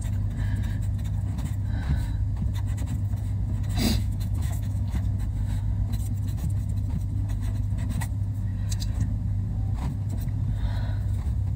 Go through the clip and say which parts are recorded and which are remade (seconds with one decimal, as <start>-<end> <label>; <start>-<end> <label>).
0.0-4.0 recorded; 4.0-5.1 remade; 5.1-11.6 recorded